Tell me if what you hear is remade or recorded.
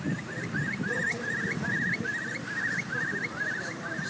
remade